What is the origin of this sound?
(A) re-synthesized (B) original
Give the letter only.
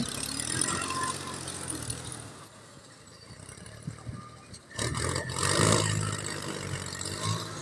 B